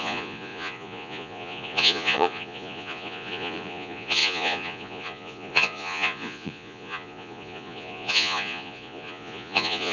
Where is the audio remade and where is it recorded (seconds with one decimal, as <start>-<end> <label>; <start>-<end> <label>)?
0.0-9.9 remade